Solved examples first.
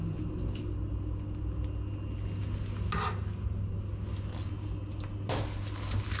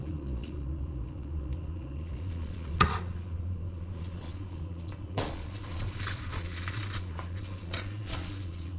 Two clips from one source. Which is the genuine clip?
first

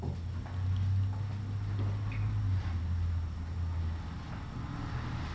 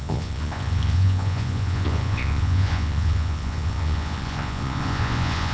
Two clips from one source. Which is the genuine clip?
first